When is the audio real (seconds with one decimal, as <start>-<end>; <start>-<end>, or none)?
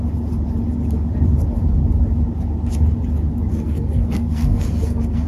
0.0-3.5